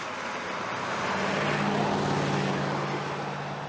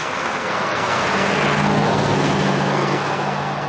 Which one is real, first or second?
first